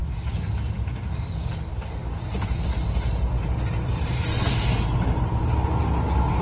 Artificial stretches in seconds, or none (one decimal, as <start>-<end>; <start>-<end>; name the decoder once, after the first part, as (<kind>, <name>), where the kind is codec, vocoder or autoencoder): none